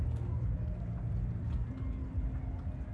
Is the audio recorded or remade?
recorded